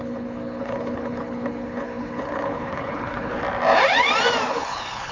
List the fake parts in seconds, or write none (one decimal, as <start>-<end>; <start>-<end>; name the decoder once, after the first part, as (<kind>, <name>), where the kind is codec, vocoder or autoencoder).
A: 0.0-3.3 (codec, HILCodec); 4.5-5.1